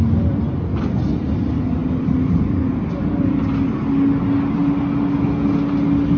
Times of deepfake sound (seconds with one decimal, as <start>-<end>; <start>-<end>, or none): none